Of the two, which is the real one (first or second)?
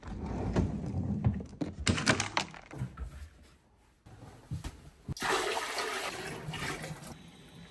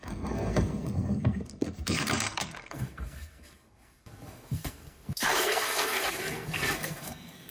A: first